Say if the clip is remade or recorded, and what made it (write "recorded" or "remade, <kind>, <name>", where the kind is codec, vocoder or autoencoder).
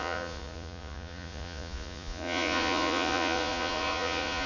remade, vocoder, Vocos